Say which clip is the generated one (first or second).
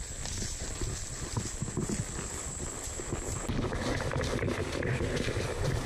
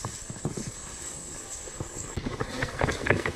second